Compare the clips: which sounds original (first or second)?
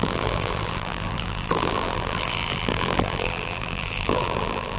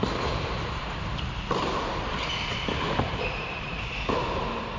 second